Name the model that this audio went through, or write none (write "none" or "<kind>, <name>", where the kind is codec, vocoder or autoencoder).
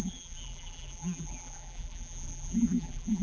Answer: vocoder, BigVGAN v2